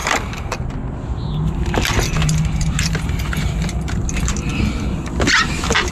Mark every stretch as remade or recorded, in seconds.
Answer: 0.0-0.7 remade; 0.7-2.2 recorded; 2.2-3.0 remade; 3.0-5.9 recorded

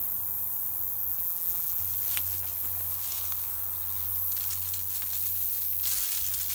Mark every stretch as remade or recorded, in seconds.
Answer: 0.0-1.1 recorded; 1.1-1.8 remade; 1.8-6.5 recorded

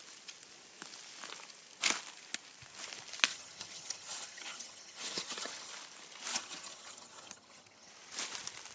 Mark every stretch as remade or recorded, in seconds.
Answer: 0.0-3.3 recorded; 3.3-5.7 remade; 5.7-6.3 recorded; 6.3-7.9 remade; 7.9-8.7 recorded

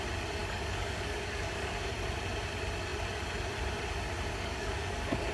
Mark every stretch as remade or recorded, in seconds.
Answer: 0.0-0.4 recorded; 0.4-1.9 remade; 1.9-4.3 recorded; 4.3-5.3 remade

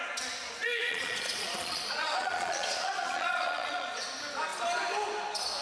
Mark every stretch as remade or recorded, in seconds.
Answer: 0.0-0.6 recorded; 0.6-4.0 remade; 4.0-5.6 recorded

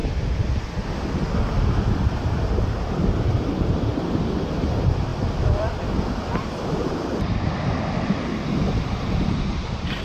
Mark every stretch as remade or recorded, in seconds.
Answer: 0.0-2.0 recorded; 2.0-5.1 remade; 5.1-5.8 recorded; 5.8-7.1 remade; 7.1-8.9 recorded; 8.9-10.0 remade

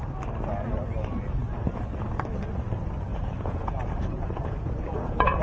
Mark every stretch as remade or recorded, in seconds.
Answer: 0.0-3.1 recorded; 3.1-5.4 remade